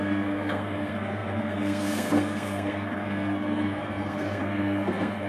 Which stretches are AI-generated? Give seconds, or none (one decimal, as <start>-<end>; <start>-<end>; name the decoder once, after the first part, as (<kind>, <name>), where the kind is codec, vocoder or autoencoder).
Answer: 0.0-5.3 (codec, SNAC)